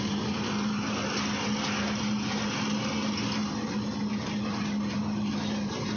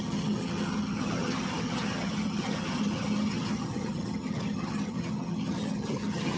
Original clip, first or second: first